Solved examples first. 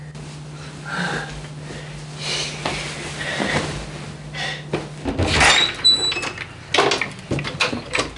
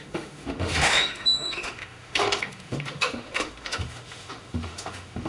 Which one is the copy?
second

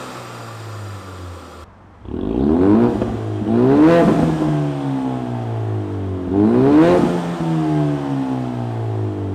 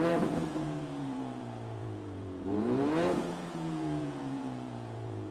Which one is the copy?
second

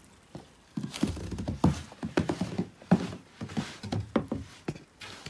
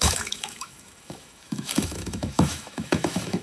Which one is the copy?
second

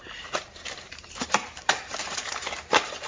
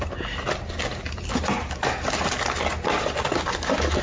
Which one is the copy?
first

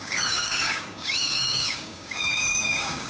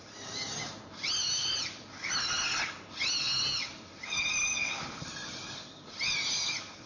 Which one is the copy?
first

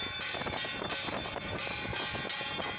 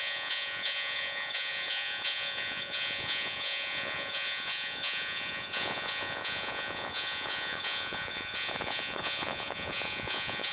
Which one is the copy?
second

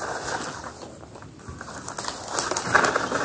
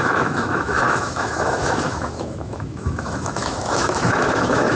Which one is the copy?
second